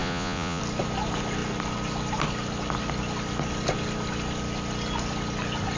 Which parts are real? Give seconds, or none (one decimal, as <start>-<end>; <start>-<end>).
0.6-5.8